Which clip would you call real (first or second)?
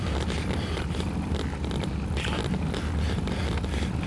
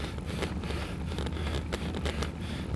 second